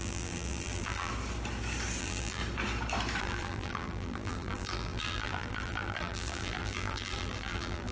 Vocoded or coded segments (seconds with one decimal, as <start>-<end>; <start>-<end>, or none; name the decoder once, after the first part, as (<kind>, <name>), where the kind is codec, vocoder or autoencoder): 0.0-1.1 (vocoder, BigVGAN v2); 2.0-2.4; 3.2-7.9